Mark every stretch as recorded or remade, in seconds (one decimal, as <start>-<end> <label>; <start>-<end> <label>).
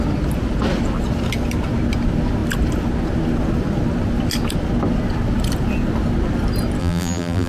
0.0-6.8 recorded; 6.8-7.5 remade